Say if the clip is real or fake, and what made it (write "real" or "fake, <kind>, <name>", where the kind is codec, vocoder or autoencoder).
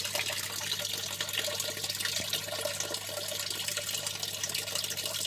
real